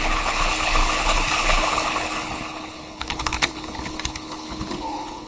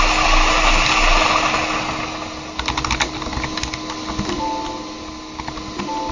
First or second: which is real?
second